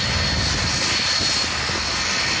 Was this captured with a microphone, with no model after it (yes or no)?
yes